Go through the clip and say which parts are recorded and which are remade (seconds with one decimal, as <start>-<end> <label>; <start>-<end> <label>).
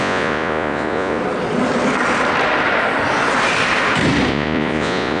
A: 0.0-1.2 remade; 1.2-4.3 recorded; 4.3-5.2 remade